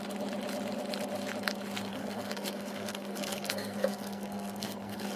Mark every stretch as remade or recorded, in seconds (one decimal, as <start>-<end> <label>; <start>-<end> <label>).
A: 0.0-1.9 recorded; 1.9-5.2 remade